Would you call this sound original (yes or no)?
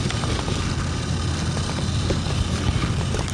yes